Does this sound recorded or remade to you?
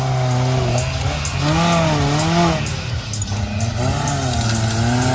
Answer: recorded